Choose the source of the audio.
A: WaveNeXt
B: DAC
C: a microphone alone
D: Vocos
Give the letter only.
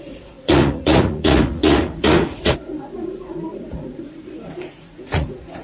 D